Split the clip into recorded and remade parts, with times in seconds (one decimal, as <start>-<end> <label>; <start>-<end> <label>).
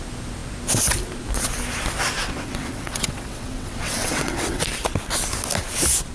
0.0-2.2 recorded; 2.2-4.6 remade; 4.6-6.1 recorded